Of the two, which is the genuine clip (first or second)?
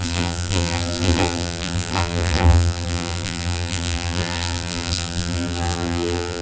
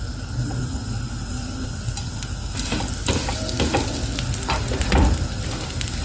second